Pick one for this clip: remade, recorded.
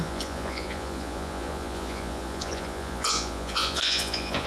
remade